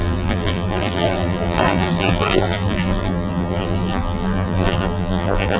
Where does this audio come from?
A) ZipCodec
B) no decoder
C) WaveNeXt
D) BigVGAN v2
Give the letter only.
D